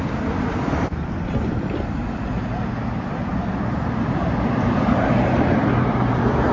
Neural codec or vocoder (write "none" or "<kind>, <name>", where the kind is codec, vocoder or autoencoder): vocoder, BigVGAN v2